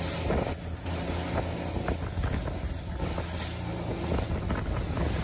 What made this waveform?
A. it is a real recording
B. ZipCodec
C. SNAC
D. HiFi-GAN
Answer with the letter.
A